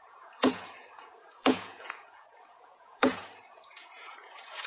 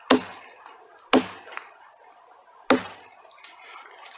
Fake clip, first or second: first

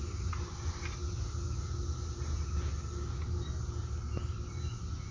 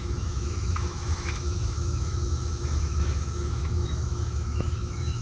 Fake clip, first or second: second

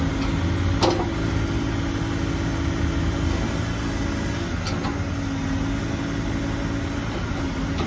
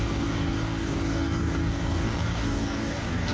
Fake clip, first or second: second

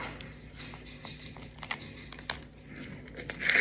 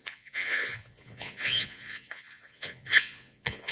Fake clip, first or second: second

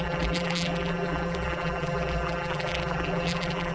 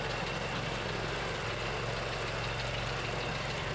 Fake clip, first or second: first